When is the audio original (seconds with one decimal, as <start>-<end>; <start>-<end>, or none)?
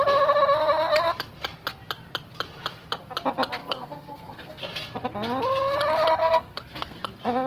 0.0-3.6; 4.6-6.2; 7.0-7.5